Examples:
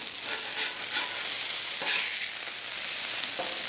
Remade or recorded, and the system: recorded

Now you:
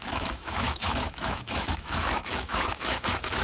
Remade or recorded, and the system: remade, autoencoder, DAC-VAE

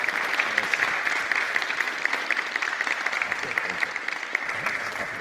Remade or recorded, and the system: recorded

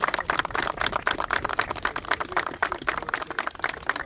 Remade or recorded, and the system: recorded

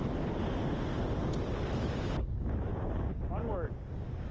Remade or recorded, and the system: recorded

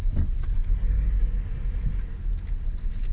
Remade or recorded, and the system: recorded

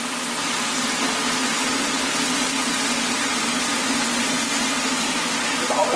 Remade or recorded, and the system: recorded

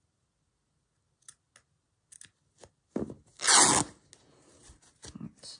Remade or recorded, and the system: recorded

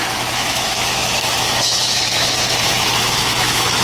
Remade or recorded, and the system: remade, autoencoder, DAC-VAE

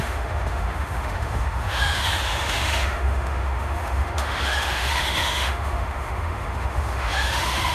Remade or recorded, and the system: remade, autoencoder, DAC-VAE